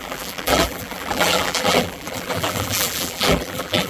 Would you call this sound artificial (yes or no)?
yes